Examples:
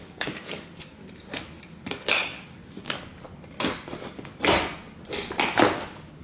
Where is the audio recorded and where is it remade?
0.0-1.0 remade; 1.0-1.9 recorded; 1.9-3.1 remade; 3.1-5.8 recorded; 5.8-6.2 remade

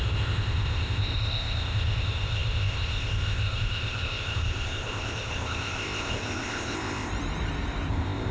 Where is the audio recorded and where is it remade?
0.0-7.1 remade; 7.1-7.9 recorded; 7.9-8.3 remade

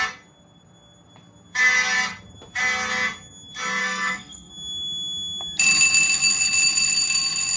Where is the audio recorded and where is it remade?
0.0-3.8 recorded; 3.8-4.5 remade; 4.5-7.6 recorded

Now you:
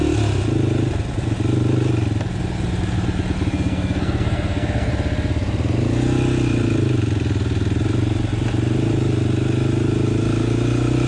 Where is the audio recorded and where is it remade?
0.0-3.5 recorded; 3.5-4.9 remade; 4.9-11.1 recorded

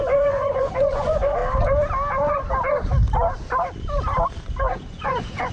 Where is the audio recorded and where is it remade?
0.0-1.4 remade; 1.4-4.7 recorded; 4.7-5.5 remade

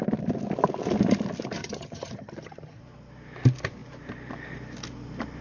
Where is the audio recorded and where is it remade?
0.0-1.6 recorded; 1.6-2.8 remade; 2.8-5.4 recorded